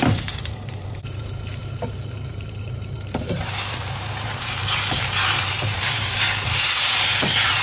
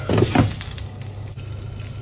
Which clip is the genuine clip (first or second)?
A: second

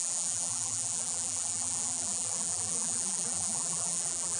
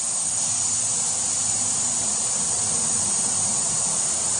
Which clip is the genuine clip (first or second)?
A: second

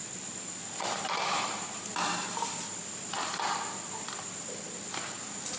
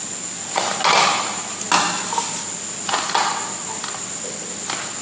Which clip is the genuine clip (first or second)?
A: second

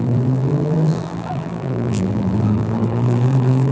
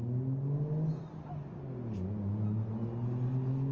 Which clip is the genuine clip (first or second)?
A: second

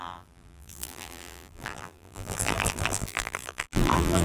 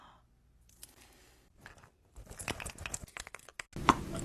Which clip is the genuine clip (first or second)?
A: second